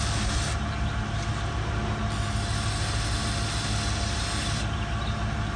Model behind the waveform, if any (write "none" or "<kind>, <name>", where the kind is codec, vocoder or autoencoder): none